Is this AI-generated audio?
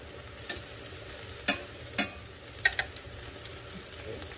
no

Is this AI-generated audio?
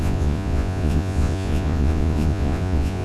yes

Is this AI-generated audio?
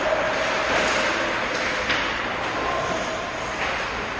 no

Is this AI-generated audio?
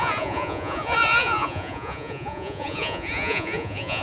yes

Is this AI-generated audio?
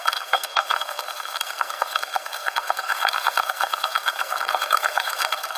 yes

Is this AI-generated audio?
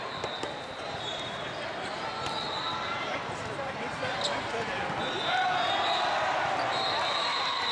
no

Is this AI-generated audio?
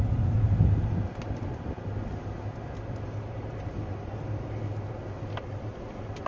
no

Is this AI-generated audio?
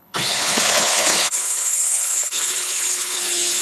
yes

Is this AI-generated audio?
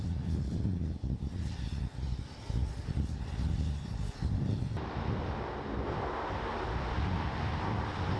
no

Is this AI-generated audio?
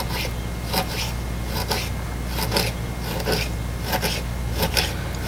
no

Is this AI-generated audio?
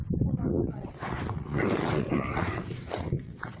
yes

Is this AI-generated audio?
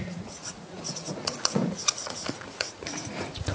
yes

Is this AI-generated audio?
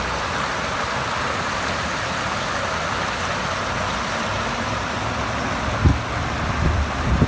no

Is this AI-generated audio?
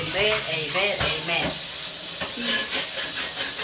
no